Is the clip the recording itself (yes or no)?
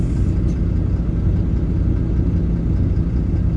yes